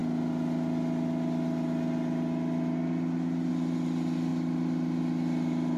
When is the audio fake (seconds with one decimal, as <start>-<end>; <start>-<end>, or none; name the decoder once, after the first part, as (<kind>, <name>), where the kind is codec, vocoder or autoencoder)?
none